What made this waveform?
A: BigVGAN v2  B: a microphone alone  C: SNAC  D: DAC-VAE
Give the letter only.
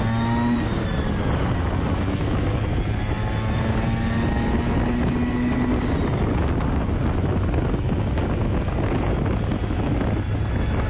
B